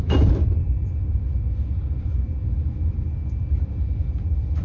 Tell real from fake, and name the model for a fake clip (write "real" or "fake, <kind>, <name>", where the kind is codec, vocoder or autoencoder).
fake, vocoder, BigVGAN v2